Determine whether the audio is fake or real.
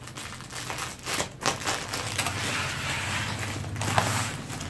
real